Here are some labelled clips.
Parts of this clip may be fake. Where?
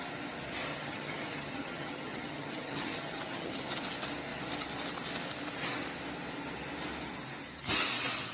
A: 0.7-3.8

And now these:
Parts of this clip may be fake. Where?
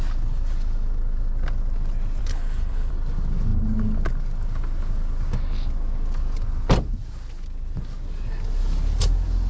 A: 2.2-2.9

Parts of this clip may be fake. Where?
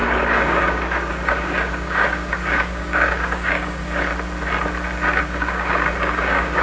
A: 0.0-4.1; 5.2-6.6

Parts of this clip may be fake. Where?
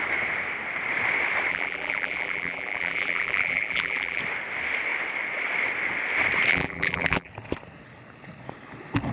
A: 1.5-4.2; 6.5-7.3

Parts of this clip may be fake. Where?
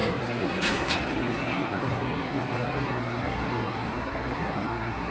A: 0.0-5.1